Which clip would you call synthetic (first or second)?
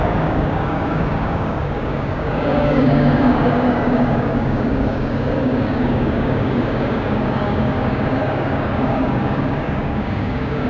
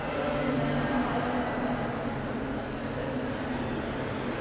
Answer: first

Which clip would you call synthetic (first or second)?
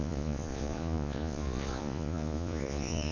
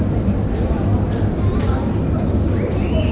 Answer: first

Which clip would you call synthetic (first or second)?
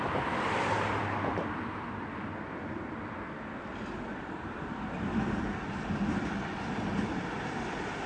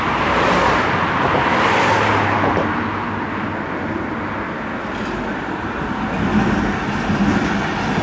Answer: first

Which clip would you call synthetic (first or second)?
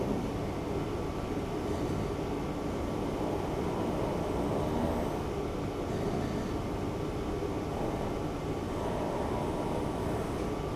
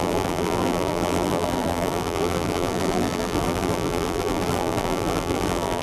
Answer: second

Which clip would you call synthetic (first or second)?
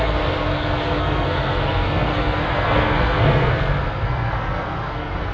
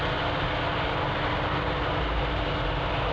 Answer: first